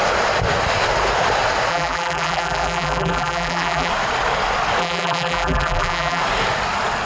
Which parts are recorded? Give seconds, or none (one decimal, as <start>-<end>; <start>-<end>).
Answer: 0.0-1.7; 3.9-4.8; 6.2-7.1